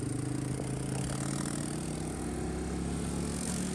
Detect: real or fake real